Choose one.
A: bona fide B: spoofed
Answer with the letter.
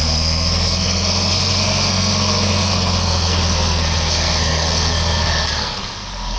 B